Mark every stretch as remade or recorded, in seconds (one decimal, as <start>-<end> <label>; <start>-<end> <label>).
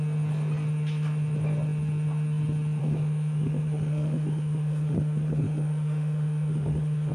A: 0.0-2.8 recorded; 2.8-7.1 remade